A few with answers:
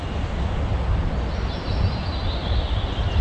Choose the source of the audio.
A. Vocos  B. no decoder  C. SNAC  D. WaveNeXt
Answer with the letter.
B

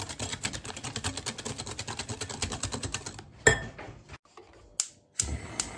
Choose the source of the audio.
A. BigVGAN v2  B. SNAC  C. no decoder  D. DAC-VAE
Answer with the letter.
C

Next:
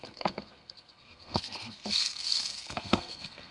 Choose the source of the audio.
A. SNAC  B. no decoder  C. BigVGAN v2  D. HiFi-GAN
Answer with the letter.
A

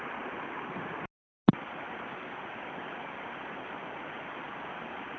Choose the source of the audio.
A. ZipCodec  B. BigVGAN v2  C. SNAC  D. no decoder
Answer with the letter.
D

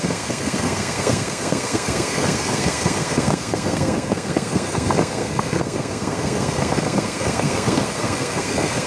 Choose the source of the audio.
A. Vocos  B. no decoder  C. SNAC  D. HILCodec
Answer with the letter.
C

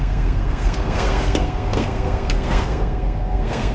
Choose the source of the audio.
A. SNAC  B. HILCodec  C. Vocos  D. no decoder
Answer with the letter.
A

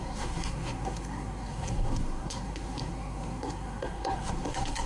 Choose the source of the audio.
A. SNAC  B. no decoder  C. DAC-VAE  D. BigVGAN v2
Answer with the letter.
A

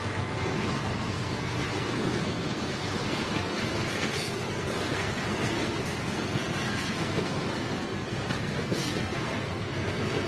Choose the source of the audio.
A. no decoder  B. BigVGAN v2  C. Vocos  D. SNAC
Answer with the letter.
D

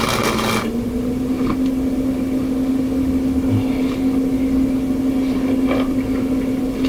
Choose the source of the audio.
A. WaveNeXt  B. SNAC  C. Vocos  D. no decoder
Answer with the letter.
D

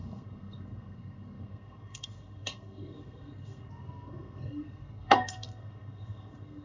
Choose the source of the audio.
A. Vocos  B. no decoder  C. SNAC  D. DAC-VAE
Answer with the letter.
C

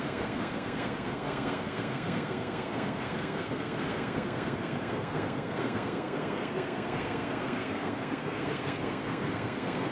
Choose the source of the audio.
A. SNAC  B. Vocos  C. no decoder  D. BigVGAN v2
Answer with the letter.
A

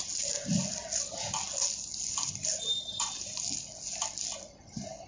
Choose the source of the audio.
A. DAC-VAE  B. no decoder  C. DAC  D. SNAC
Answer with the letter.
B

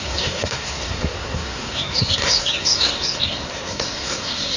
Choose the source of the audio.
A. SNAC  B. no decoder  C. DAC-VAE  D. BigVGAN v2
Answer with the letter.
A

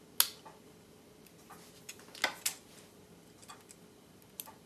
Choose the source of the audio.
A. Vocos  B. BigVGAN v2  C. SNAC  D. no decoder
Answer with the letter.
D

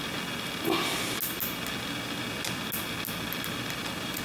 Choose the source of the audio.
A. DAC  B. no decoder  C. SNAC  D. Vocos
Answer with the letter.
B